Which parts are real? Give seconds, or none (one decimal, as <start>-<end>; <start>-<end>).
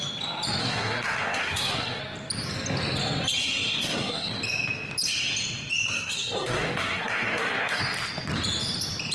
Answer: 0.0-0.6; 2.0-3.4; 4.3-5.9; 7.8-9.1